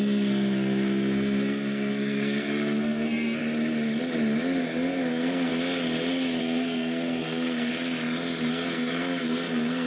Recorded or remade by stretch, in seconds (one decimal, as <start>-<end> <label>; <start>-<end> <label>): 0.0-3.4 remade; 3.4-4.6 recorded; 4.6-5.5 remade; 5.5-6.4 recorded; 6.4-7.7 remade; 7.7-8.5 recorded; 8.5-9.9 remade